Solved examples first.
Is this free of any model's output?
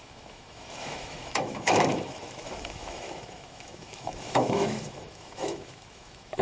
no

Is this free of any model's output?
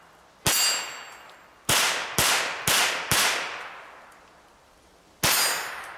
yes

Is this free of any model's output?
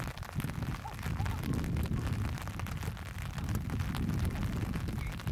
yes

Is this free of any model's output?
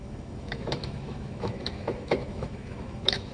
no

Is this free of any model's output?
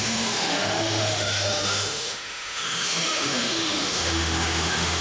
no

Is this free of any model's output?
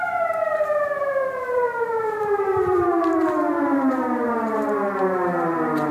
yes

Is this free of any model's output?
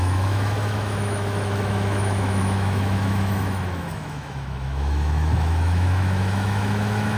no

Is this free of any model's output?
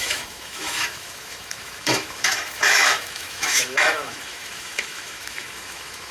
no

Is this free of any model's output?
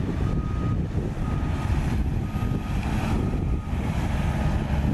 yes